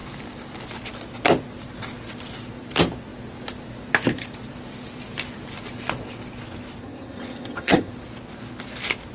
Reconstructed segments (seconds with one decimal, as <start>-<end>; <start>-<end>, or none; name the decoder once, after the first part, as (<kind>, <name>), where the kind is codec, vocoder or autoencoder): 6.8-7.9 (vocoder, HiFi-GAN)